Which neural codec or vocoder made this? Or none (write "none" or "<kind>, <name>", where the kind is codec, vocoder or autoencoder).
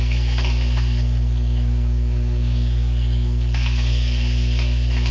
codec, SNAC